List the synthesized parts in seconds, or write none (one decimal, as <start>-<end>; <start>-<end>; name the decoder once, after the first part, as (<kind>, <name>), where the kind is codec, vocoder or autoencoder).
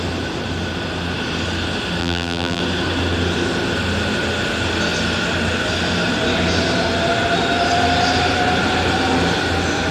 2.0-2.6 (vocoder, BigVGAN v2)